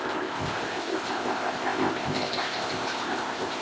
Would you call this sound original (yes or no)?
no